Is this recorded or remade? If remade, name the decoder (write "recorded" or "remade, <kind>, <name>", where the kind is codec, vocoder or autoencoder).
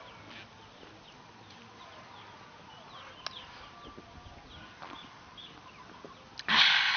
recorded